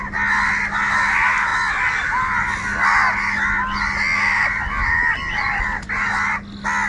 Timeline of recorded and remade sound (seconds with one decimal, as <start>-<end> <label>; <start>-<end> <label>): 0.0-6.9 recorded